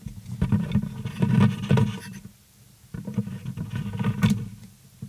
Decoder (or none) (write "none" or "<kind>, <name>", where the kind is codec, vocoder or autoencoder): none